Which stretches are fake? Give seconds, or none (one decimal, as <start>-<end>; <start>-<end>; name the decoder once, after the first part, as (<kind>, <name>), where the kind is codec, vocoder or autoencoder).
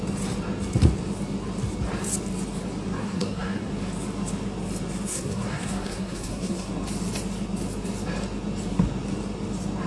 3.0-3.7 (codec, SNAC); 5.1-6.7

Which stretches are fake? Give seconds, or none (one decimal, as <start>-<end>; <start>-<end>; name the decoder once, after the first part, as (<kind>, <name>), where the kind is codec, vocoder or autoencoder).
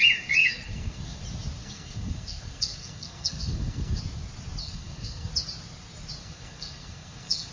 0.4-1.2 (codec, SNAC); 1.6-4.0; 4.6-5.3; 6.2-7.5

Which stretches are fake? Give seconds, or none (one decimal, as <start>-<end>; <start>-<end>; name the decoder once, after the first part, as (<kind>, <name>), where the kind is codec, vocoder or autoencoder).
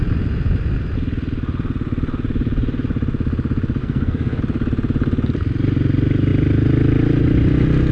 3.8-4.4 (codec, SNAC)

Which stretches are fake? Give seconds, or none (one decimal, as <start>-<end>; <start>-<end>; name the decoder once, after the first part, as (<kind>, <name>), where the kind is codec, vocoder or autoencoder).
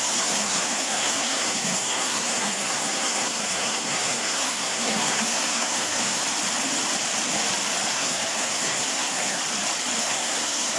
0.0-6.2 (codec, SNAC); 7.9-9.4; 10.0-10.8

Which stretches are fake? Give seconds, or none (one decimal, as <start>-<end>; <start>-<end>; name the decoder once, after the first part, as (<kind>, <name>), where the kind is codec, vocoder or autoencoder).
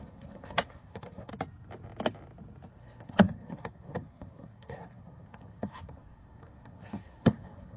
0.0-1.3 (codec, SNAC); 2.7-7.8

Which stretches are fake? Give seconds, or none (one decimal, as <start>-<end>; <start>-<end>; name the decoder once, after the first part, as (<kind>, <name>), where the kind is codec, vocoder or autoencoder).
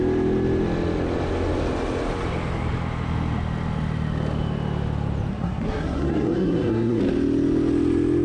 5.3-7.0 (codec, SNAC)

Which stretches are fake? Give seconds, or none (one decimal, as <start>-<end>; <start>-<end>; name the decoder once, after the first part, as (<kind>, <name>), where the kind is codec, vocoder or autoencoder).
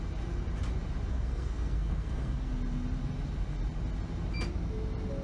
1.1-2.5 (codec, SNAC)